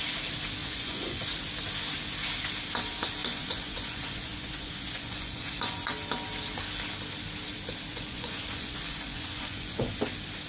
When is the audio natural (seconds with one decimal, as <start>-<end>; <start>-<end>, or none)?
0.0-0.6; 1.2-3.2; 5.9-7.9; 10.0-10.5

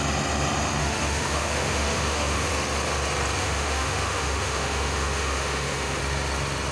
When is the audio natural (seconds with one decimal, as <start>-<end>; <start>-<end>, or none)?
0.0-0.8; 2.5-3.4; 6.0-6.7

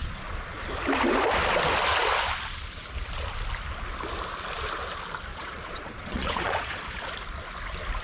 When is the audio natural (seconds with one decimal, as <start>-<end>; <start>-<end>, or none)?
0.6-5.3; 6.8-8.0